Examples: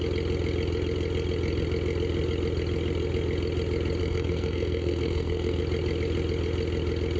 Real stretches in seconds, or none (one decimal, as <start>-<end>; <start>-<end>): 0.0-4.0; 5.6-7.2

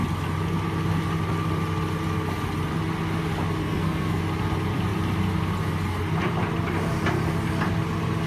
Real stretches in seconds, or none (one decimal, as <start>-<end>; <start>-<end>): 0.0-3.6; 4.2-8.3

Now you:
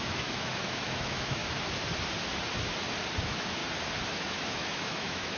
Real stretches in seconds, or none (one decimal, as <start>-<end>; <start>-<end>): 1.4-3.2; 3.6-4.1

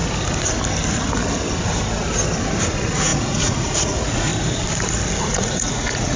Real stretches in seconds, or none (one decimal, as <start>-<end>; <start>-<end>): 0.0-2.6; 4.3-5.2

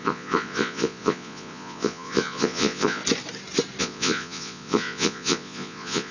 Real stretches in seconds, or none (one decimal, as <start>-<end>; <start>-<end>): 3.0-3.8

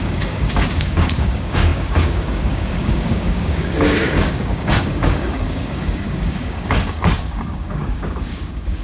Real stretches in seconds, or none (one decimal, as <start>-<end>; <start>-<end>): none

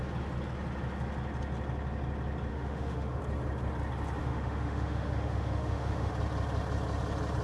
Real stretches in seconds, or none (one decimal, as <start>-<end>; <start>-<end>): 0.0-2.5; 3.2-4.2; 6.1-7.4

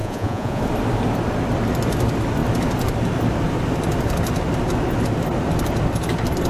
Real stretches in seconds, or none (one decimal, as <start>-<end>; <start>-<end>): 0.6-6.5